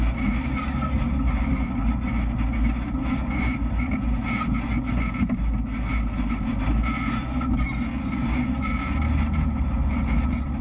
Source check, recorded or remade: recorded